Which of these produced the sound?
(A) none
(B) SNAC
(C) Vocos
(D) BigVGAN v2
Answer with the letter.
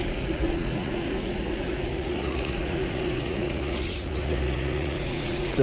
C